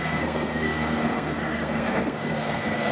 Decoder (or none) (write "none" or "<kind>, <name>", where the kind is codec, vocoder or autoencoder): codec, SNAC